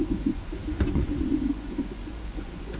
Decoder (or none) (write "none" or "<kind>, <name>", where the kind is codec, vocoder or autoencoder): vocoder, Vocos